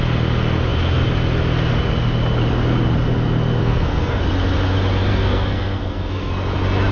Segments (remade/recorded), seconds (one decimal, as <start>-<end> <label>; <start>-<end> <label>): 0.0-3.6 recorded; 3.6-4.2 remade; 4.2-5.1 recorded; 5.1-6.3 remade; 6.3-6.9 recorded